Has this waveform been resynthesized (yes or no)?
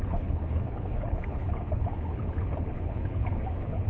yes